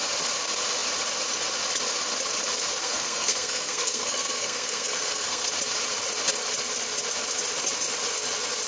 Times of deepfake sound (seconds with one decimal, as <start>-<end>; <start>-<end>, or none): 2.8-5.5